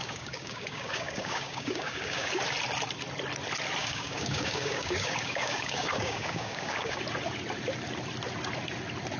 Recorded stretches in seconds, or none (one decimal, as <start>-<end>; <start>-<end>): 2.4-3.8; 7.0-9.2